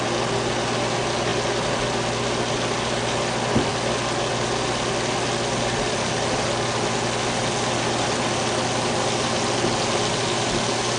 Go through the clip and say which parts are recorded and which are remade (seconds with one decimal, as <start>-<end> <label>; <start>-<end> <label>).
0.0-11.0 recorded